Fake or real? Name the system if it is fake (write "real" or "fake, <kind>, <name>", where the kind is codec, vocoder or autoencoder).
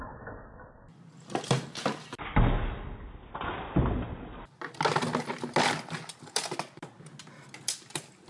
real